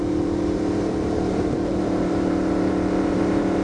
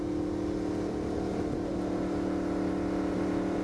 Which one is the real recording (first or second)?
second